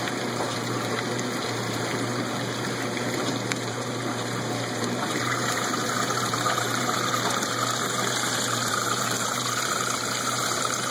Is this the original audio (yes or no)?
no